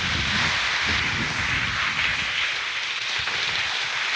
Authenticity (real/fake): real